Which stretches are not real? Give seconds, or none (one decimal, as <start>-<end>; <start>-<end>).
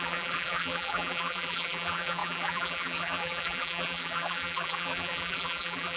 0.0-6.0